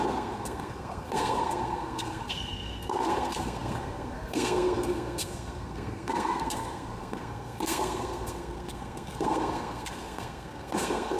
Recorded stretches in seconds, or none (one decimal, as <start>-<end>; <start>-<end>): none